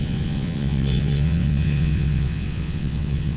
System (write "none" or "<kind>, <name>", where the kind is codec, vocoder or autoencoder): vocoder, WaveNeXt